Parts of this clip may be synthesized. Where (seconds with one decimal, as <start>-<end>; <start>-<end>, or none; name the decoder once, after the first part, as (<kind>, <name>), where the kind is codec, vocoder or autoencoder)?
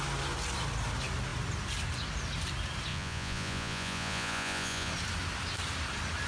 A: 2.9-4.9 (vocoder, Vocos)